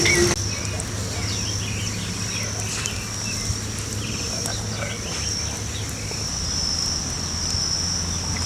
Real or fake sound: real